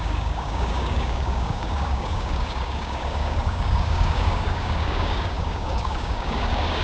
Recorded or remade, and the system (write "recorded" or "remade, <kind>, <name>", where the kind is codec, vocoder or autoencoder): remade, codec, DAC